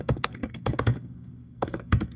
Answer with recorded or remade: remade